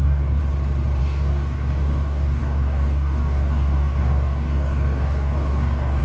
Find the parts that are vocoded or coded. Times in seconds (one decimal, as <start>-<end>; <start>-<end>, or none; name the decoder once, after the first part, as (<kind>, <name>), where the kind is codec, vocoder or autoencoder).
0.0-0.4 (codec, DAC); 1.0-6.0